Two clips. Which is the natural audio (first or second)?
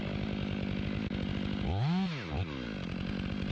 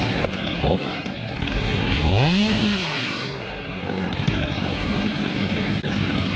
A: first